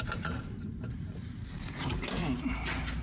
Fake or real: fake